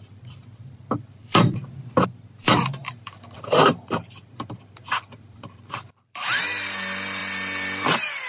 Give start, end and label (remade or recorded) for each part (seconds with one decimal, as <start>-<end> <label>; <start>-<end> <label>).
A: 0.0-1.6 remade; 1.6-2.4 recorded; 2.4-8.3 remade